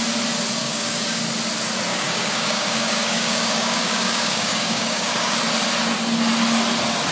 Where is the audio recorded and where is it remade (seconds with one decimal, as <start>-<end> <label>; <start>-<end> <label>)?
0.0-0.6 recorded; 0.6-1.2 remade; 1.2-1.9 recorded; 1.9-5.4 remade; 5.4-7.1 recorded